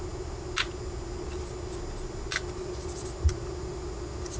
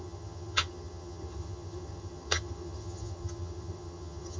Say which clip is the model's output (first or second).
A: second